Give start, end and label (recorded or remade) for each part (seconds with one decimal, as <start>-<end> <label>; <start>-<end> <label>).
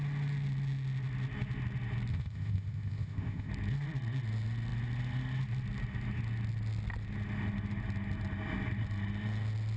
0.0-2.1 recorded; 2.1-3.5 remade; 3.5-9.8 recorded